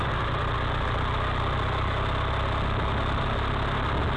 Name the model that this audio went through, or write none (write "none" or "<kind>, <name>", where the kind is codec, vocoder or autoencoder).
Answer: none